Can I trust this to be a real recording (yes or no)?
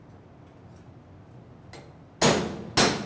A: yes